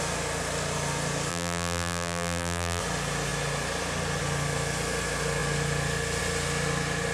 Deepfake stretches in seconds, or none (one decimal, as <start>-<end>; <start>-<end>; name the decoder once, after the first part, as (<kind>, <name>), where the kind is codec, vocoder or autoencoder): 1.3-2.8 (vocoder, BigVGAN v2)